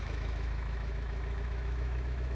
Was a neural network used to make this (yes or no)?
yes